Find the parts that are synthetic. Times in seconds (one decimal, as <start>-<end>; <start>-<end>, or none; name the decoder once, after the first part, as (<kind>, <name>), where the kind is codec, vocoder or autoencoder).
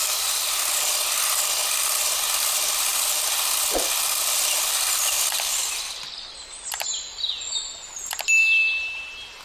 8.4-9.0 (vocoder, BigVGAN v2)